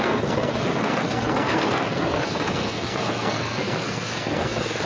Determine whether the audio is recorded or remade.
remade